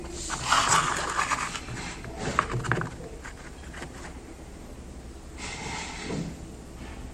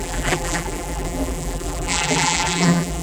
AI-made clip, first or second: second